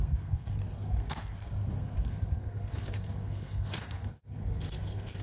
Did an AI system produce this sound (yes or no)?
yes